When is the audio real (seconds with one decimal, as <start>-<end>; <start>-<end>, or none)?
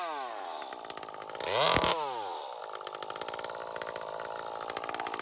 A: 0.0-5.2